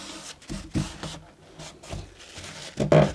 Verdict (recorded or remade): recorded